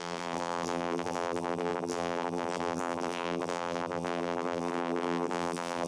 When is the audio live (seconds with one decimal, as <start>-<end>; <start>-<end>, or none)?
none